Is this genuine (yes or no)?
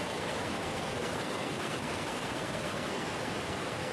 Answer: no